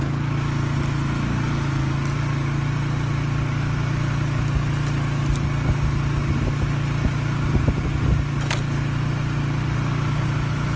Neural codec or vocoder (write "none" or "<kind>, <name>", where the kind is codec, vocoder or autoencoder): none